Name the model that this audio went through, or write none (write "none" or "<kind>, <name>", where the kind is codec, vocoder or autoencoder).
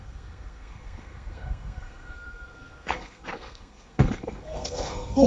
codec, SNAC